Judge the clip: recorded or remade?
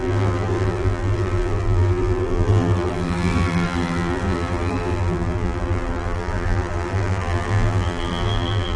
remade